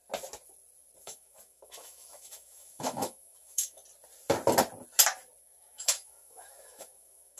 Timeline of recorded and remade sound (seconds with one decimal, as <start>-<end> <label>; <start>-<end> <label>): 0.0-1.0 recorded; 1.0-3.8 remade; 3.8-5.4 recorded; 5.4-7.4 remade